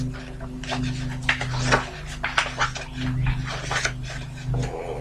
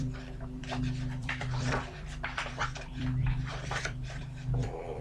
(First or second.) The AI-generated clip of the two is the second